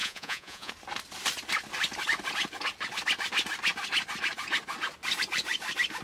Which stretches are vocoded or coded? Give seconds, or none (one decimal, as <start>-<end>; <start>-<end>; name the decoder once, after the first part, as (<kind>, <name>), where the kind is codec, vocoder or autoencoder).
0.0-0.7 (vocoder, Vocos)